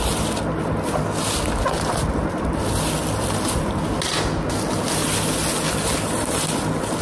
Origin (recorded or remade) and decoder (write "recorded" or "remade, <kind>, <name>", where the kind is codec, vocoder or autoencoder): recorded